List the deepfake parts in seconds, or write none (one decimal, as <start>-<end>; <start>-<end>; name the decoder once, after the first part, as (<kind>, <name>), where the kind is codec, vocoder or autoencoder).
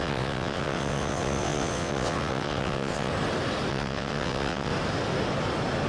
0.0-3.1 (vocoder, WaveNeXt); 3.7-4.7